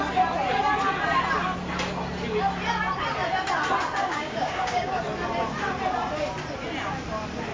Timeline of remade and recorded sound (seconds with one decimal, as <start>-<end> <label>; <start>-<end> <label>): 0.0-4.0 recorded; 4.0-5.0 remade; 5.0-7.5 recorded